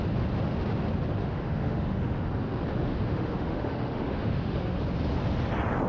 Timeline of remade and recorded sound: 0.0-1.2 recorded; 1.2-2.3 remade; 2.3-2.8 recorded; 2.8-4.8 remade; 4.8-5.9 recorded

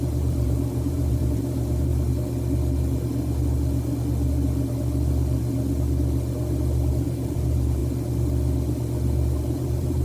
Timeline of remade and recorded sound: 0.0-1.9 remade; 1.9-6.9 recorded; 6.9-7.8 remade; 7.8-9.4 recorded; 9.4-10.0 remade

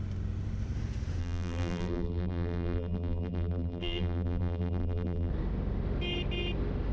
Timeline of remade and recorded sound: 0.0-1.2 recorded; 1.2-5.3 remade; 5.3-6.9 recorded

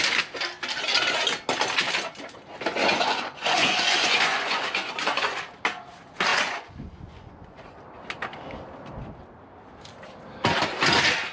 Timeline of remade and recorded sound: 0.0-2.8 recorded; 2.8-5.4 remade; 5.4-6.3 recorded; 6.3-7.8 remade; 7.8-11.3 recorded